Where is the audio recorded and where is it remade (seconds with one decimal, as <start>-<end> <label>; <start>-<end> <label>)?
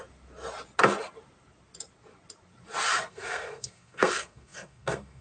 0.0-3.1 recorded; 3.1-5.2 remade